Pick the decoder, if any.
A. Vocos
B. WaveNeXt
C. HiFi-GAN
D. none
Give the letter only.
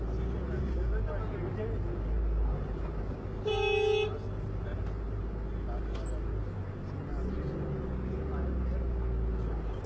D